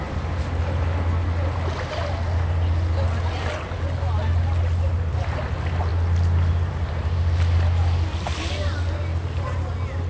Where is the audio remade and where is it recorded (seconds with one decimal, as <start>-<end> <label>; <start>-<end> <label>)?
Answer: 0.0-10.1 recorded